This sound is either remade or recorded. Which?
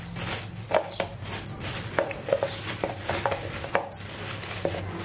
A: recorded